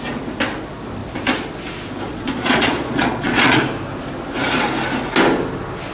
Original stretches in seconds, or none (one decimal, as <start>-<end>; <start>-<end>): 0.0-2.1; 3.6-5.9